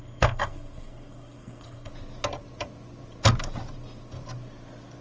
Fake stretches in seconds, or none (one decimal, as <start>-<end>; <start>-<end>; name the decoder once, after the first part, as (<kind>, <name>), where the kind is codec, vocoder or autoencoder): 0.0-1.9 (codec, SNAC)

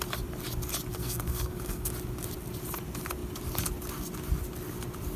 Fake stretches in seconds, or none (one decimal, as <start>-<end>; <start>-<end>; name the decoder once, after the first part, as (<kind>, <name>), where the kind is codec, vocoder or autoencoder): 0.9-1.9 (codec, SNAC)

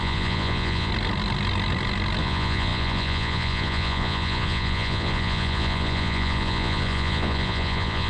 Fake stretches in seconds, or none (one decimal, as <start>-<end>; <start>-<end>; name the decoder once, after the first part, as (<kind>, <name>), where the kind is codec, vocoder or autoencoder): 0.0-0.9 (vocoder, Vocos); 2.2-8.1

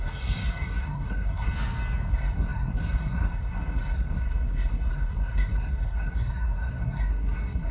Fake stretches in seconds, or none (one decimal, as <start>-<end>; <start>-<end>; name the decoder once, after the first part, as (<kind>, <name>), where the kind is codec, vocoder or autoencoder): 0.0-1.5 (codec, SNAC); 2.1-7.7

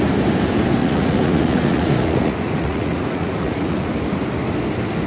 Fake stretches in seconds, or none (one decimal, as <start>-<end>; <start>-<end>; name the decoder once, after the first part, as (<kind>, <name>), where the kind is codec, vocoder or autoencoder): 0.8-3.9 (vocoder, Vocos)

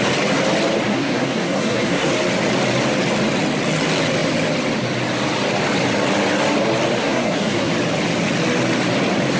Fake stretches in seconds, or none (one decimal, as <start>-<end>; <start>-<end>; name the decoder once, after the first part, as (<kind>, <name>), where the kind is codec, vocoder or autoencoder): 0.9-2.1 (codec, SNAC); 7.0-7.7